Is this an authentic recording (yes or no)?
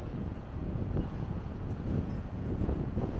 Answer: no